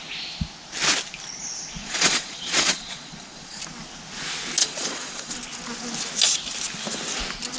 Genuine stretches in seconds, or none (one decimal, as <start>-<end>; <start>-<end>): 0.0-1.8; 3.6-4.6; 5.3-7.6